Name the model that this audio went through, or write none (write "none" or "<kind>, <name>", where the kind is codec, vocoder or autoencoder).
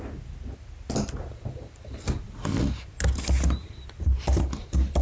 none